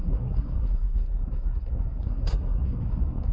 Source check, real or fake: fake